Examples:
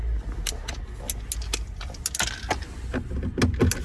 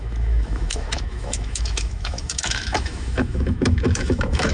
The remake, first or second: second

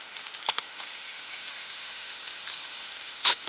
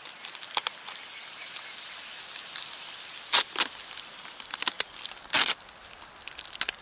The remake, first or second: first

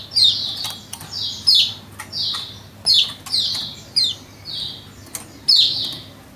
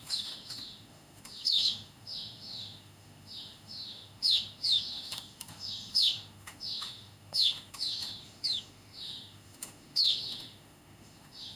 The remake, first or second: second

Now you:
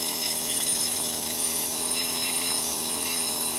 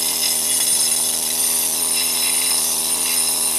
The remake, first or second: first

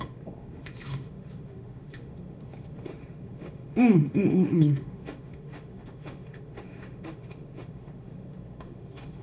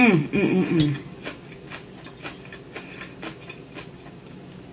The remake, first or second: first